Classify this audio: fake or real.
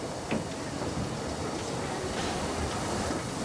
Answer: real